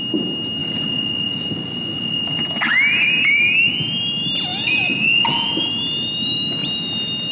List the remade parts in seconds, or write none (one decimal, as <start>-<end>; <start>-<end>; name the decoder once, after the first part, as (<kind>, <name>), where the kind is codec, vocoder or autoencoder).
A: 0.6-2.4 (vocoder, Vocos); 4.5-5.7

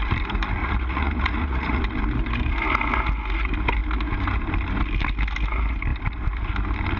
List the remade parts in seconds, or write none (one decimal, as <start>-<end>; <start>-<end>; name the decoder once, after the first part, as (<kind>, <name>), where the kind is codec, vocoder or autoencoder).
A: 0.6-1.8 (vocoder, Vocos)

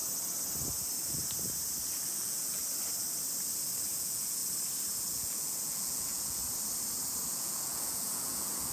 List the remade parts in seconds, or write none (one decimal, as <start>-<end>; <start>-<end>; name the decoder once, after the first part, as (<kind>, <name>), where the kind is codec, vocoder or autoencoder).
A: 2.2-2.6 (vocoder, Vocos); 3.9-4.4; 5.1-6.4; 7.3-8.7

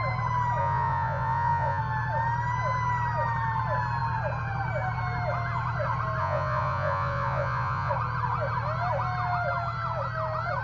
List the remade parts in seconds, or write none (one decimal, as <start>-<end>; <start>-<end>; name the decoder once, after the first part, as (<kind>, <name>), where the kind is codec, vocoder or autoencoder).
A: 0.6-1.8 (vocoder, Vocos); 6.2-7.9